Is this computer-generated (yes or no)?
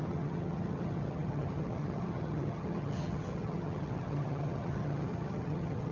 yes